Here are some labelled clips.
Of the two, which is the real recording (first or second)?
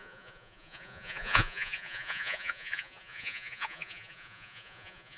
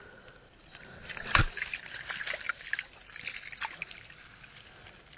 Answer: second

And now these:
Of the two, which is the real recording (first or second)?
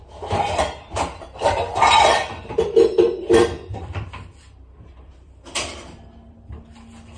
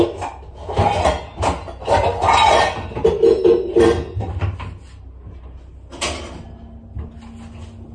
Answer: second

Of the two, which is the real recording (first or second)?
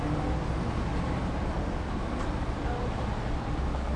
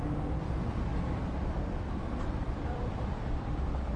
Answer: first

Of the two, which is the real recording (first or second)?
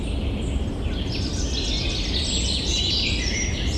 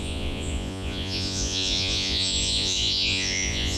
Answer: first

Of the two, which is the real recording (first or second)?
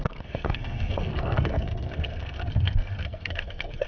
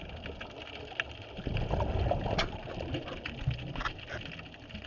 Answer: second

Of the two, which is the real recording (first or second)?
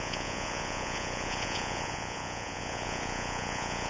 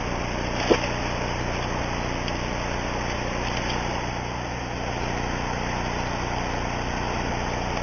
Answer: second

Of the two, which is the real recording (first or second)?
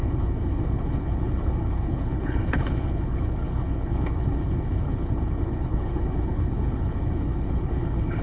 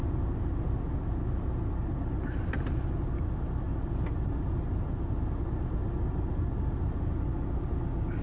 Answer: second